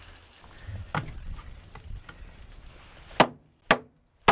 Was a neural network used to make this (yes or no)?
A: no